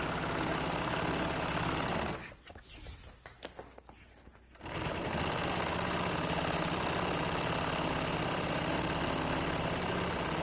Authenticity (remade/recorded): recorded